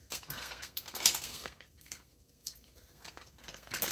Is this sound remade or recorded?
remade